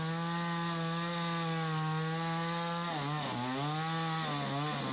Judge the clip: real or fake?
real